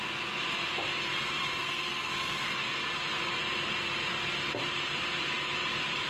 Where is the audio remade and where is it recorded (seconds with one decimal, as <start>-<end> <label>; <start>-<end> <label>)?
0.0-1.6 recorded; 1.6-2.5 remade; 2.5-6.1 recorded